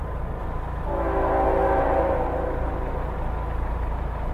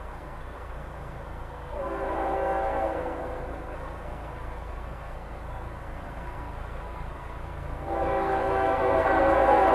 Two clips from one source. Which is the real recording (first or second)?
first